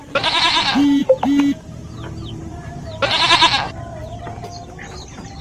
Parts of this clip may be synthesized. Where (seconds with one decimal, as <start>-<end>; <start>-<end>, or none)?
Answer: 0.0-1.0; 2.5-3.3